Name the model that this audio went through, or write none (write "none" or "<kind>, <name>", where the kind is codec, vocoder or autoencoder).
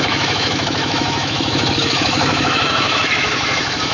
autoencoder, DAC-VAE